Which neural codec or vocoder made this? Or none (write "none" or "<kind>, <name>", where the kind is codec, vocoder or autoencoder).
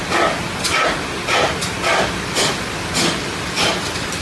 none